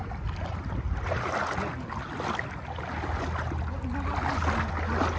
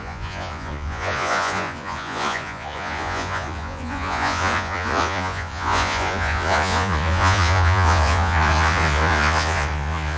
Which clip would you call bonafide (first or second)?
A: first